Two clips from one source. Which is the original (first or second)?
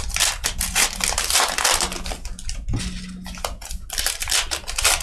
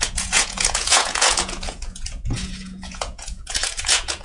first